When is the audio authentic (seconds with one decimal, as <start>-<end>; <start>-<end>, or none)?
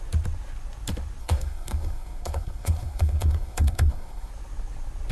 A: 0.0-1.2; 4.3-5.1